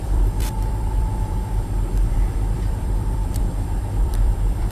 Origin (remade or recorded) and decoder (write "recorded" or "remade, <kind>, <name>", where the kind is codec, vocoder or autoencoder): remade, vocoder, BigVGAN v2